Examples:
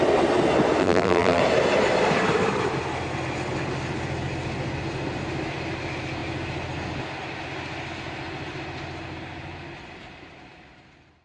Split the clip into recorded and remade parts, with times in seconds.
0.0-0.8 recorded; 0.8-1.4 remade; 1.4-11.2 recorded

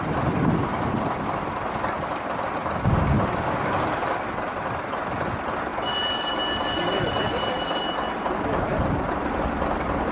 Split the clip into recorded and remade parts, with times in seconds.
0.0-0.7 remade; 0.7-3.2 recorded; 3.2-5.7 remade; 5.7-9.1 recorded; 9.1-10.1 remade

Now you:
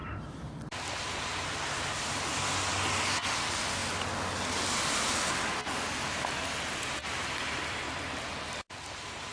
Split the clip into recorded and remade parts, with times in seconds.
0.0-9.3 recorded

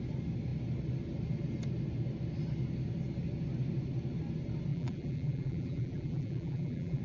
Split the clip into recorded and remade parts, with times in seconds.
0.0-4.7 recorded; 4.7-7.0 remade